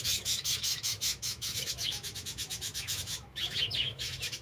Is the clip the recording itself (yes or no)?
no